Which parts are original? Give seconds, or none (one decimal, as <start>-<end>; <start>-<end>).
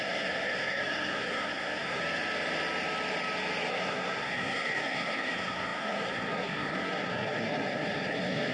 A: 2.0-3.7